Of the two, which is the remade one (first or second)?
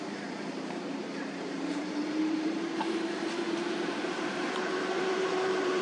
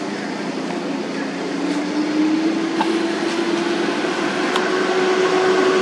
first